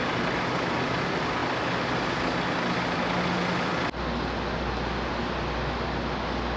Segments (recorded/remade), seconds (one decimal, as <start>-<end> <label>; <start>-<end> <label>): 0.0-6.6 recorded

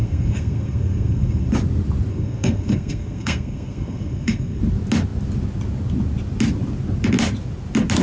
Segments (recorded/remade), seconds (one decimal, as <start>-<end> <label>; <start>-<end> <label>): 0.0-1.5 remade; 1.5-2.1 recorded; 2.1-4.6 remade; 4.6-8.0 recorded

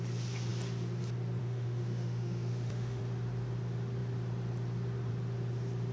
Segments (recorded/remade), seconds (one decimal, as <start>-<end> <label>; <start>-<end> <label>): 0.0-1.4 recorded; 1.4-3.0 remade; 3.0-5.9 recorded

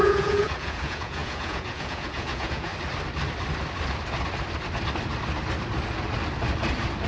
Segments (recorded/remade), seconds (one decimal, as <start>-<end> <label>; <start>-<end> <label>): 0.0-2.7 remade; 2.7-7.1 recorded

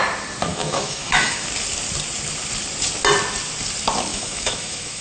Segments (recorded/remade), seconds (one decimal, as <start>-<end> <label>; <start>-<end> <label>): 0.0-0.5 recorded; 0.5-1.5 remade; 1.5-4.1 recorded; 4.1-5.0 remade